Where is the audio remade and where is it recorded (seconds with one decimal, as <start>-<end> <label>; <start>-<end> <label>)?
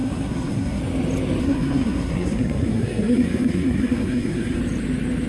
0.0-0.8 remade; 0.8-1.4 recorded; 1.4-4.6 remade; 4.6-5.3 recorded